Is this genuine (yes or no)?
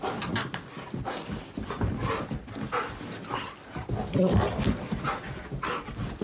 yes